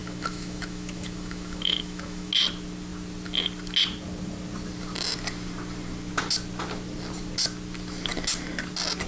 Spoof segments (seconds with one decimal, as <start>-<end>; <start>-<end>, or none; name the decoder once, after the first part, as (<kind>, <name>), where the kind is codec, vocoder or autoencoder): 0.0-2.3 (autoencoder, DAC-VAE)